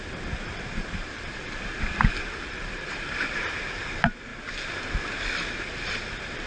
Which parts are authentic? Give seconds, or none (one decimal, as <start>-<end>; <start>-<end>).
4.3-5.6